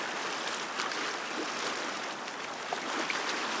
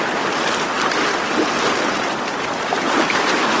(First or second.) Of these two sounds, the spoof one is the second